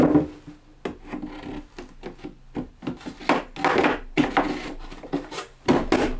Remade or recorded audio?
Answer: recorded